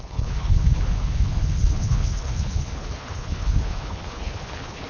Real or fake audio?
fake